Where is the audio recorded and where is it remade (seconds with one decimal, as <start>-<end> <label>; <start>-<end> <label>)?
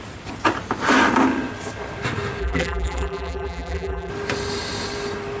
0.0-2.4 recorded; 2.4-4.1 remade; 4.1-5.4 recorded